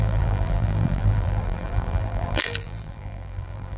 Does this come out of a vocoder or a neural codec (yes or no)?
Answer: yes